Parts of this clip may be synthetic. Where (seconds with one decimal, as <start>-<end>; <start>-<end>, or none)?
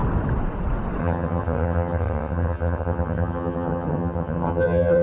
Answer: 1.0-5.0